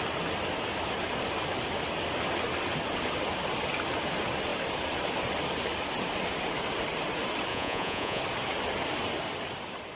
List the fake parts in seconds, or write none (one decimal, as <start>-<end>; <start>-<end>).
7.5-8.2